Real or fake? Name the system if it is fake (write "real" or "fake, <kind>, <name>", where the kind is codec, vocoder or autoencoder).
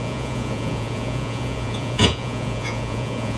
fake, vocoder, Vocos